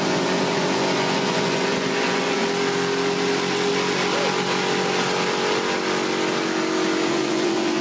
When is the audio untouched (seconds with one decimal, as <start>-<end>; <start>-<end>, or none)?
2.4-7.1